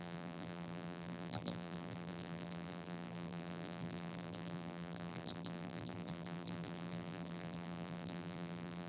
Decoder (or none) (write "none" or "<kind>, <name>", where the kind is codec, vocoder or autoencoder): vocoder, BigVGAN v2